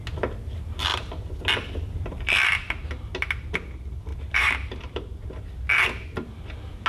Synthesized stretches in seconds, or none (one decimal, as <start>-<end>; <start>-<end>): 4.1-5.4